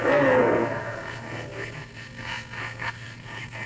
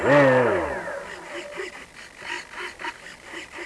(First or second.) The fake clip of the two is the first